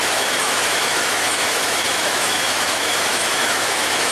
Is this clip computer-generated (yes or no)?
yes